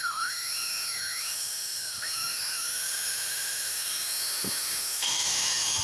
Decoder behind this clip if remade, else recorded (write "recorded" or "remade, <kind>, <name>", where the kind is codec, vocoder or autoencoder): remade, autoencoder, DAC-VAE